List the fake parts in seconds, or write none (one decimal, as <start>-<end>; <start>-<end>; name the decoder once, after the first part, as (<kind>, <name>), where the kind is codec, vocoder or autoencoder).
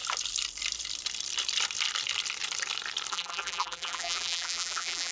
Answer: 3.1-5.1 (vocoder, BigVGAN v2)